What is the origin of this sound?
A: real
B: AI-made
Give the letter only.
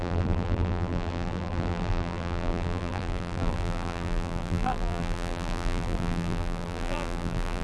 B